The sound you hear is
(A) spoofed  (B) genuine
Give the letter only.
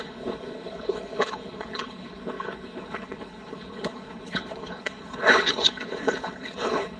A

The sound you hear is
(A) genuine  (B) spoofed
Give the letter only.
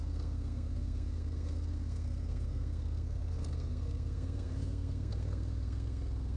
B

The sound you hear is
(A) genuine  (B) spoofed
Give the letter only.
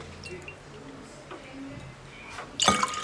A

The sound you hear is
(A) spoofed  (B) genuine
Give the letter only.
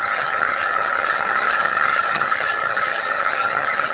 A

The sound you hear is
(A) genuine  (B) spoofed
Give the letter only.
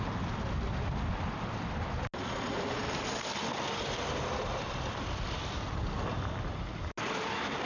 A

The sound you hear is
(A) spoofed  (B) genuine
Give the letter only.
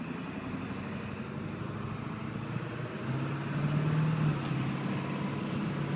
B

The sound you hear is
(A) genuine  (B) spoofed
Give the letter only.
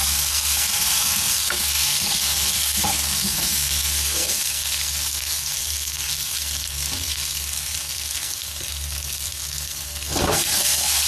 B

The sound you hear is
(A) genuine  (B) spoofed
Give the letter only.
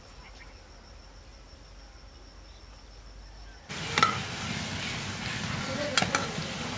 A